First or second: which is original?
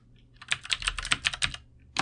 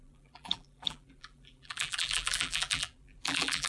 first